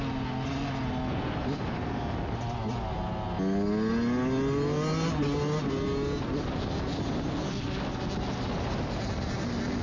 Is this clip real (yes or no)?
yes